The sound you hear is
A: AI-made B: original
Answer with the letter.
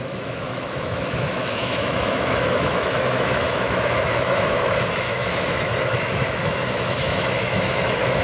A